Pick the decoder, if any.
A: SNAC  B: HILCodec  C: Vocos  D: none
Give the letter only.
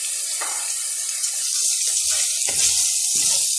D